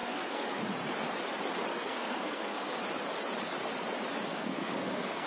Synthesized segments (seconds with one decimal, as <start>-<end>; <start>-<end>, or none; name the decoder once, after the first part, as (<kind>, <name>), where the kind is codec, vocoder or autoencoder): 0.0-0.6 (codec, SNAC); 1.7-2.8; 4.3-5.3